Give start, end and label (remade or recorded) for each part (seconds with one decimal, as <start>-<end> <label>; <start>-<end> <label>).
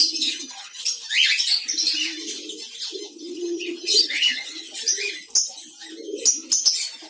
0.0-0.8 remade; 0.8-3.2 recorded; 3.2-4.8 remade; 4.8-7.1 recorded